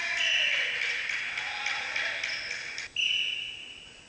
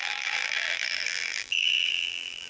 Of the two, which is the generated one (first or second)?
second